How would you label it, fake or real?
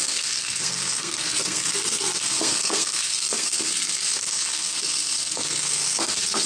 fake